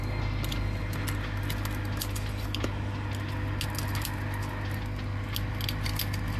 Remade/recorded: recorded